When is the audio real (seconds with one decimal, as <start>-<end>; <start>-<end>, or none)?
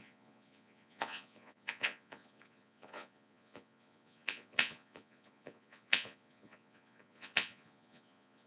none